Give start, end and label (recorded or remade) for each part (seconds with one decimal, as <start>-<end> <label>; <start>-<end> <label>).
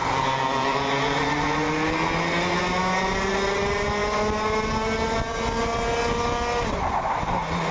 0.0-7.7 recorded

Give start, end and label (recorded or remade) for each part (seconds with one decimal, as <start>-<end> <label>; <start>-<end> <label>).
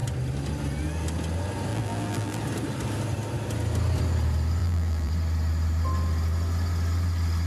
0.0-1.7 recorded; 1.7-2.4 remade; 2.4-4.6 recorded; 4.6-5.1 remade; 5.1-7.5 recorded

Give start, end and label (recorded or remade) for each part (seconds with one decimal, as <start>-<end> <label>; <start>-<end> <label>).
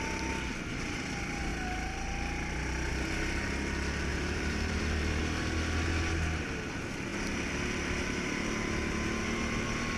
0.0-4.1 recorded; 4.1-5.2 remade; 5.2-10.0 recorded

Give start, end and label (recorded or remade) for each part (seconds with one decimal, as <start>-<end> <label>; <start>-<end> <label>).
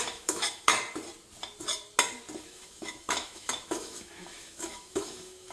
0.0-0.7 remade; 0.7-2.4 recorded; 2.4-5.5 remade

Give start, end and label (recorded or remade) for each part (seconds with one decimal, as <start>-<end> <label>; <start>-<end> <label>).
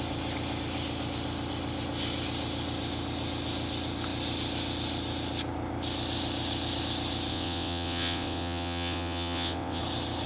0.0-7.3 recorded; 7.3-9.8 remade; 9.8-10.3 recorded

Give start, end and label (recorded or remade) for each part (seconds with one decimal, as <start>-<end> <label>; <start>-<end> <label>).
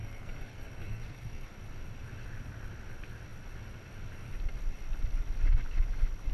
0.0-1.5 remade; 1.5-6.3 recorded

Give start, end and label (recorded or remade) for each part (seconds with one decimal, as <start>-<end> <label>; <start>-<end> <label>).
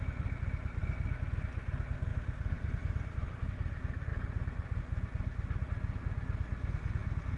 0.0-2.1 recorded; 2.1-3.4 remade; 3.4-7.4 recorded